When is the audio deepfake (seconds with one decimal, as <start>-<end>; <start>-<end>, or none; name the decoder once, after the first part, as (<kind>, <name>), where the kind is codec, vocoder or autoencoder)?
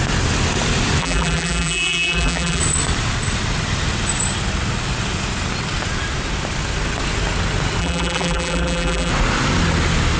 1.0-2.6 (vocoder, BigVGAN v2); 7.8-9.1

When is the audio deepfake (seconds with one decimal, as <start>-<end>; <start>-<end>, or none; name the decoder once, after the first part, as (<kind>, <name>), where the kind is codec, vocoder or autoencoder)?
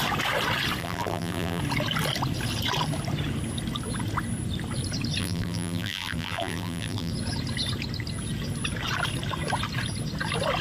0.8-1.6 (vocoder, BigVGAN v2); 5.2-7.1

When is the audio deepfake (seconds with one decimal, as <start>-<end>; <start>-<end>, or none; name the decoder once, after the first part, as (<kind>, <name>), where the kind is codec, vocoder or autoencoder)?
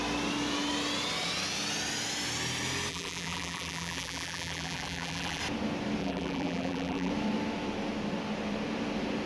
2.9-5.4 (vocoder, BigVGAN v2); 6.0-7.1